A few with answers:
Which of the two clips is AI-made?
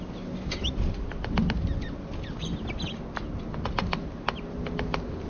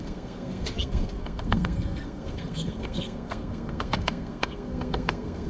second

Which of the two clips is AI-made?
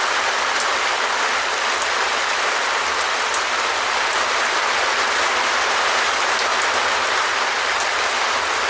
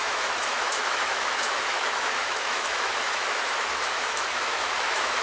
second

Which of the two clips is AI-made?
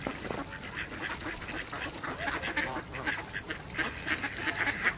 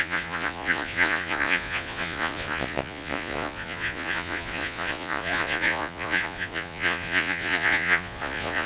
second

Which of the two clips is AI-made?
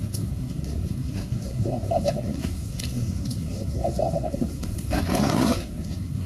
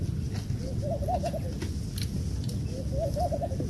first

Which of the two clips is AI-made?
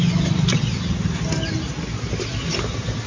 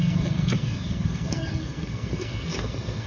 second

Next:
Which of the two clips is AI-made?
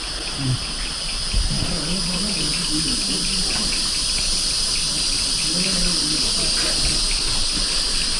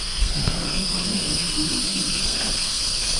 second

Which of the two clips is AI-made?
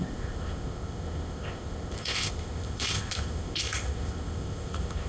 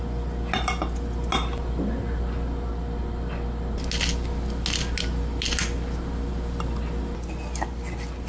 first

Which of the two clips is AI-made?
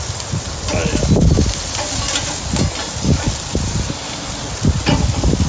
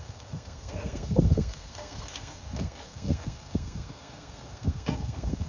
second